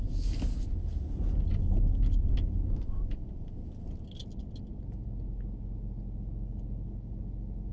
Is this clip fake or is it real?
real